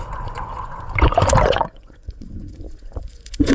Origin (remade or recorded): remade